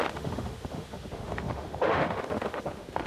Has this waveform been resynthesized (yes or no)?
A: yes